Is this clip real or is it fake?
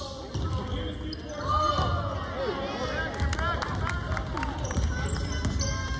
real